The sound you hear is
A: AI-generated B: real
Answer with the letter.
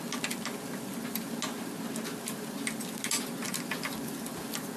B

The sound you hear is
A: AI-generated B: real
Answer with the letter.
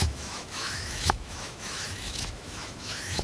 A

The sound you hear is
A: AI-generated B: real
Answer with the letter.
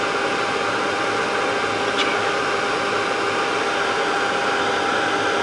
B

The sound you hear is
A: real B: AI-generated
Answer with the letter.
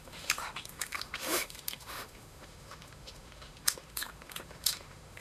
B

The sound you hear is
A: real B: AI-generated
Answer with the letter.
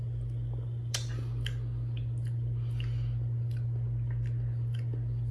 A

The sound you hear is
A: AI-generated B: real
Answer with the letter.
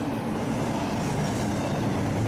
B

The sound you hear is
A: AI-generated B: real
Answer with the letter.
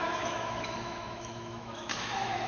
A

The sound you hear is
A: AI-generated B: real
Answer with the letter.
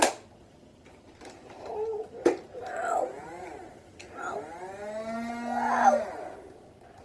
B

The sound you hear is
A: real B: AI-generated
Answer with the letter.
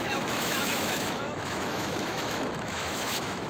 B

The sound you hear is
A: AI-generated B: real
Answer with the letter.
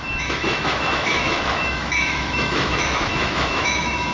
A